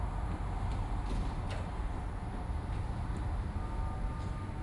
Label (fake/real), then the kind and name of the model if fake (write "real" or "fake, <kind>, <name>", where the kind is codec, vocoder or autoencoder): real